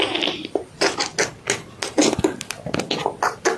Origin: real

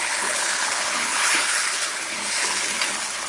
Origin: fake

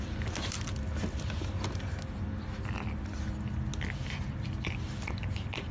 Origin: real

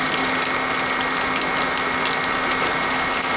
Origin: real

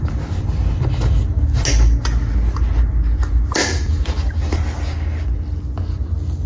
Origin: real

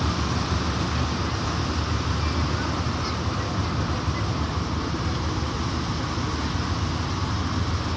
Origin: real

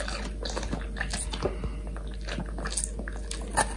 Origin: real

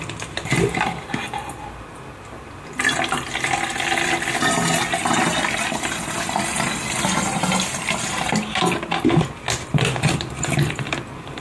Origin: real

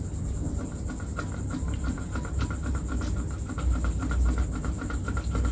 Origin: real